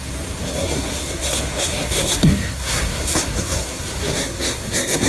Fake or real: fake